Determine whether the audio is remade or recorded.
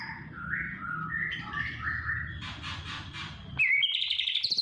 recorded